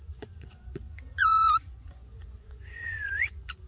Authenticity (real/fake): fake